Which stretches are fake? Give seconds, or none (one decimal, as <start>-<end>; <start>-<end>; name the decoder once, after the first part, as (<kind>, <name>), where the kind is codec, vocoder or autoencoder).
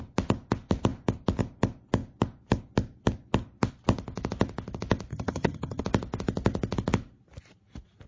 5.1-5.8 (vocoder, HiFi-GAN)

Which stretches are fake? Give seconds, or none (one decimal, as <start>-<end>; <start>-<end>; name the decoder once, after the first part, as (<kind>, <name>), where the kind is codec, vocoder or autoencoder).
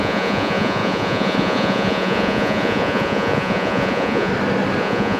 0.0-4.3 (vocoder, Vocos); 4.8-5.2